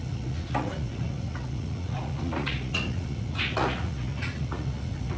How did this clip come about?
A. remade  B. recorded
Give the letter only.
A